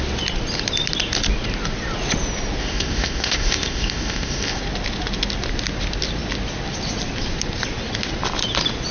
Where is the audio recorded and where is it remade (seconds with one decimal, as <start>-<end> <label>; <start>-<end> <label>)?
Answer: 0.0-2.6 recorded; 2.6-4.6 remade; 4.6-8.9 recorded